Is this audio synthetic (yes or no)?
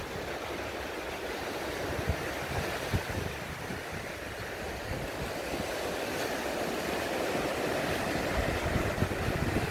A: no